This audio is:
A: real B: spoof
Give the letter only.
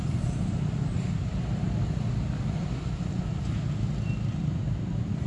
A